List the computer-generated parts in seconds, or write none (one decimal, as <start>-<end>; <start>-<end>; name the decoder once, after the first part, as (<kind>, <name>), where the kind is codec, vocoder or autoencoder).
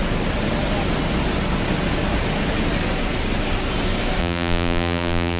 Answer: 4.2-5.4 (vocoder, BigVGAN v2)